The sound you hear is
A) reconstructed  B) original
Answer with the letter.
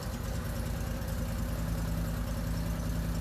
B